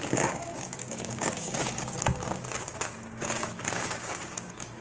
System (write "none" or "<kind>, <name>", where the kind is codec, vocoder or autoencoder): codec, DAC